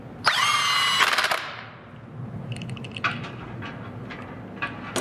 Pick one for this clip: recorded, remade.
recorded